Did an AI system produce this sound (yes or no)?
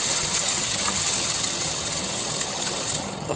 yes